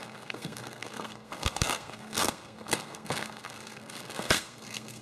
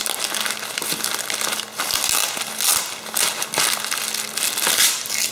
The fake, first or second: first